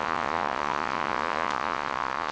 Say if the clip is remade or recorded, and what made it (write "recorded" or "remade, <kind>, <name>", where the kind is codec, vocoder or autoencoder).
remade, vocoder, Vocos